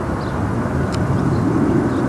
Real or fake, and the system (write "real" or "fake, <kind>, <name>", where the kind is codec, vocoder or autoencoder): real